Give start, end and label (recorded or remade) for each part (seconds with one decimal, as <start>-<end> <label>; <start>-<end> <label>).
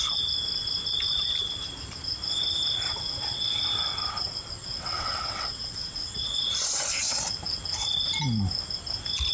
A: 0.0-2.9 recorded; 2.9-3.6 remade; 3.6-4.6 recorded; 4.6-7.2 remade; 7.2-9.3 recorded